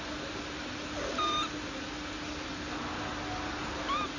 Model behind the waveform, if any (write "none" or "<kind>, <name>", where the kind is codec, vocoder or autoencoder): none